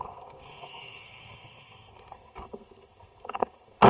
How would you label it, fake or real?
fake